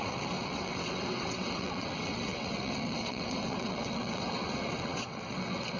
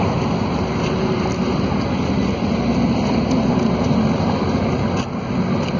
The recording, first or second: second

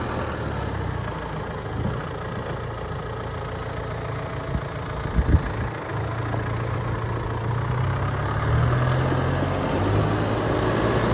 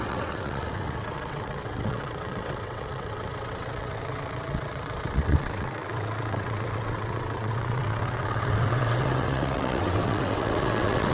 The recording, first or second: first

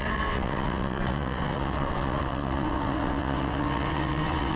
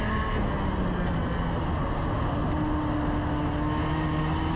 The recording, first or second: second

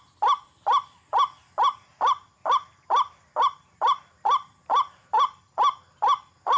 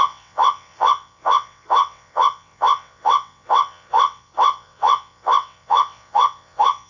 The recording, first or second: first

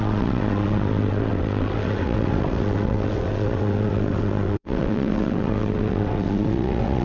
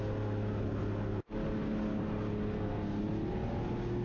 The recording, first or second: second